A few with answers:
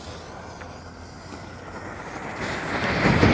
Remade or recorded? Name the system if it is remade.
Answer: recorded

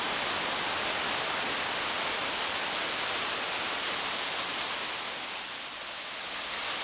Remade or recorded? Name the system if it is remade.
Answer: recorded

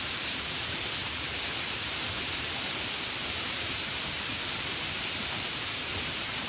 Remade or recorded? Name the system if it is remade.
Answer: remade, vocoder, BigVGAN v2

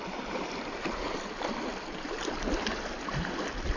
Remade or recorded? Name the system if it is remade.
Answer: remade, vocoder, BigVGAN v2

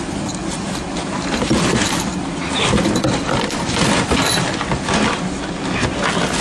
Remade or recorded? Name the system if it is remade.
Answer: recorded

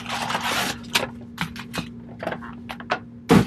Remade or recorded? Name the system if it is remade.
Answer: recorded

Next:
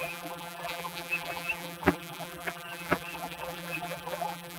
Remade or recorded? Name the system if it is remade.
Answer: remade, vocoder, BigVGAN v2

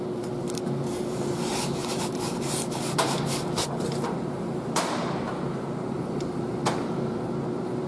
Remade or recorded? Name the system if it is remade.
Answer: remade, vocoder, BigVGAN v2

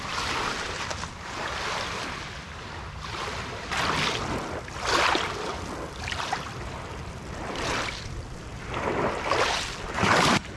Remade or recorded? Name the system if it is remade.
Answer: recorded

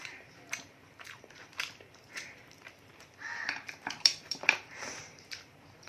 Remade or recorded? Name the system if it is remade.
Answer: remade, vocoder, BigVGAN v2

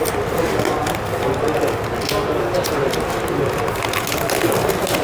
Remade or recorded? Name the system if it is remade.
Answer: recorded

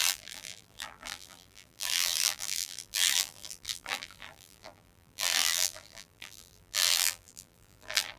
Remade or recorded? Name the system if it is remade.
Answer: remade, vocoder, BigVGAN v2